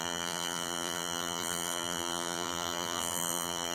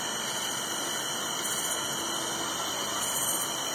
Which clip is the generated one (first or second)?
first